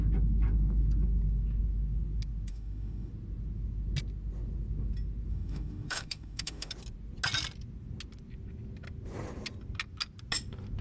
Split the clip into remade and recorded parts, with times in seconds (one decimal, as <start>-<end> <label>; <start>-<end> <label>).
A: 0.0-2.5 recorded; 2.5-3.1 remade; 3.1-5.3 recorded; 5.3-6.7 remade; 6.7-10.8 recorded